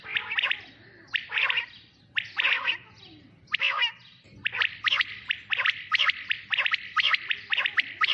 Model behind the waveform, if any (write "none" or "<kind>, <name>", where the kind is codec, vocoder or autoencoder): none